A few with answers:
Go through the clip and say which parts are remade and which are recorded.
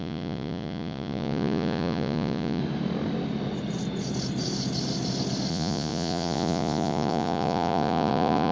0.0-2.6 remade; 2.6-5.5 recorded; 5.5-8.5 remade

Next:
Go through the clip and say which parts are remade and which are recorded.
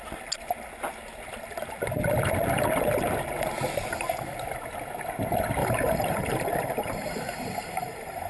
0.0-5.6 recorded; 5.6-8.3 remade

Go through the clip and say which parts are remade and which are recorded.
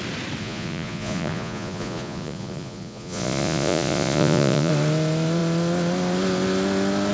0.0-0.4 recorded; 0.4-4.7 remade; 4.7-7.1 recorded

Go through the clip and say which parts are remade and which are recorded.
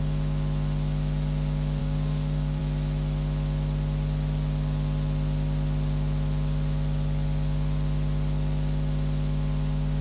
0.0-1.8 recorded; 1.8-2.6 remade; 2.6-10.0 recorded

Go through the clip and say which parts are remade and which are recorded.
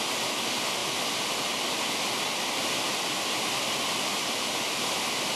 0.0-0.8 recorded; 0.8-1.5 remade; 1.5-5.4 recorded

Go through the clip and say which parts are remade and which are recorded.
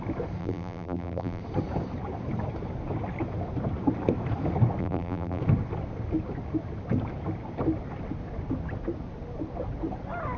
0.0-0.4 recorded; 0.4-1.4 remade; 1.4-4.8 recorded; 4.8-5.4 remade; 5.4-10.4 recorded